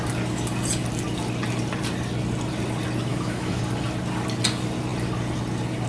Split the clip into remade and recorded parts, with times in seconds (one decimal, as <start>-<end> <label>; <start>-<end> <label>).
0.0-3.1 recorded; 3.1-3.6 remade; 3.6-5.9 recorded